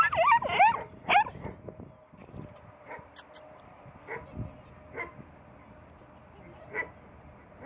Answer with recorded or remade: recorded